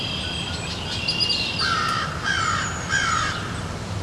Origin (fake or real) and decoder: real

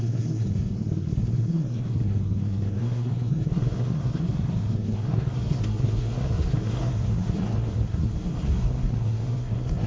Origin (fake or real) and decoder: fake, codec, SNAC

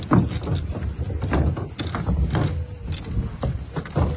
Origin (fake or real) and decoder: real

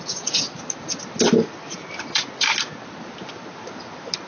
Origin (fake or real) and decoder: real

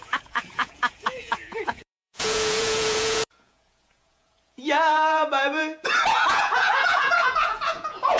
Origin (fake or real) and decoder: fake, vocoder, Vocos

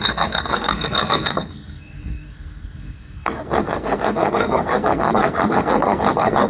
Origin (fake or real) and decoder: fake, codec, SNAC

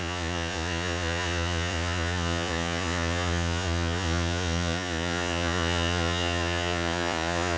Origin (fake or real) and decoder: fake, vocoder, Vocos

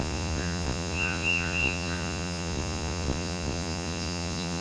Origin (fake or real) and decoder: fake, vocoder, Vocos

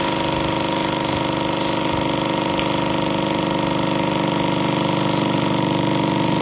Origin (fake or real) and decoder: real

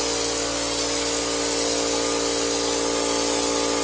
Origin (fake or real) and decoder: real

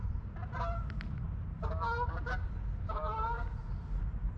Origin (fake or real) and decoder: real